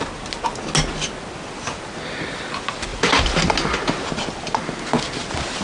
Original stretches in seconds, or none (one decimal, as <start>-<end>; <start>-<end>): 0.0-5.6